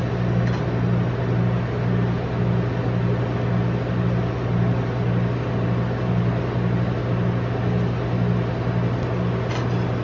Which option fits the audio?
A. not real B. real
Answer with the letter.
B